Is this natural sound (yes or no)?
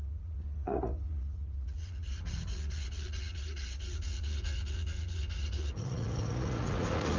no